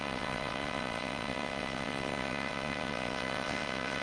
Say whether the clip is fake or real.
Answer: fake